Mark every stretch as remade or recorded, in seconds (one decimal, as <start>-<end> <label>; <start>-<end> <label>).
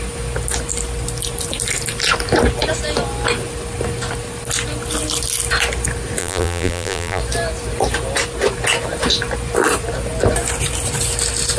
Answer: 0.0-6.2 recorded; 6.2-7.2 remade; 7.2-11.6 recorded